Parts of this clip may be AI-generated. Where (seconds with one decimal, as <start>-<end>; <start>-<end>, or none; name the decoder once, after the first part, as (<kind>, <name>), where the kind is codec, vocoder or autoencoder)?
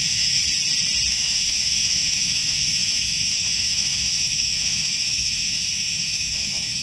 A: 0.0-0.4 (autoencoder, DAC-VAE); 1.1-6.8